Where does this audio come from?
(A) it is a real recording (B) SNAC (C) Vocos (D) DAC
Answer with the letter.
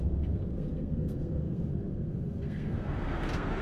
B